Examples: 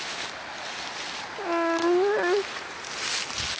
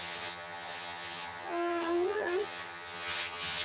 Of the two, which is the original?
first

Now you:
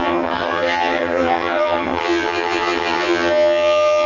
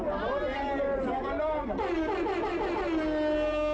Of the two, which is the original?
second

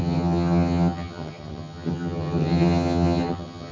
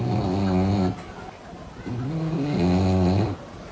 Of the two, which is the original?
second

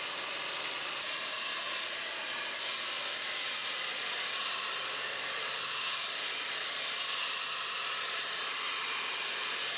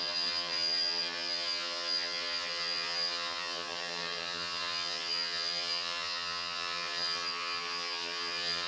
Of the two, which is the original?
first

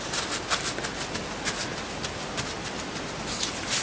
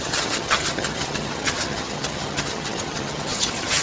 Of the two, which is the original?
first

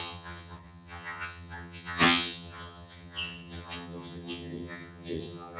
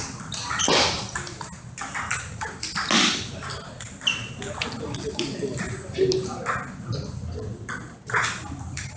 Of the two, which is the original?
second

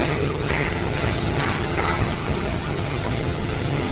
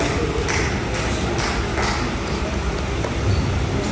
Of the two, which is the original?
second